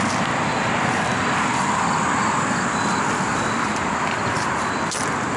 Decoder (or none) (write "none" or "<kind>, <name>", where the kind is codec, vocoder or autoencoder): none